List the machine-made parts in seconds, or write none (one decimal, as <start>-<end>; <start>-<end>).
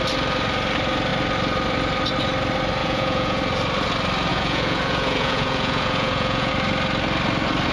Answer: 2.8-3.4; 4.3-6.5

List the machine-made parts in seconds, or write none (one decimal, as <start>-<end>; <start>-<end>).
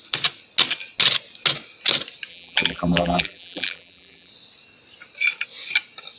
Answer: 2.3-4.3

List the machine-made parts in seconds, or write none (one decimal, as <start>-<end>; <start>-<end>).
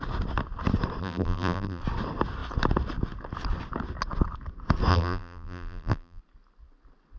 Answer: 1.0-1.8; 4.9-6.2